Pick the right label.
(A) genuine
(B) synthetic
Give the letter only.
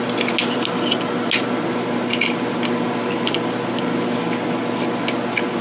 A